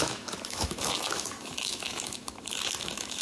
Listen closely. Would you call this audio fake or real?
fake